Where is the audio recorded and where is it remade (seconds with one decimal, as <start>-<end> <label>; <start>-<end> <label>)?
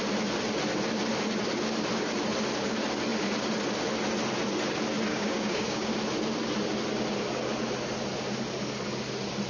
0.0-5.1 recorded; 5.1-5.9 remade; 5.9-9.5 recorded